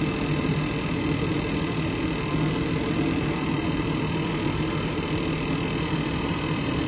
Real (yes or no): yes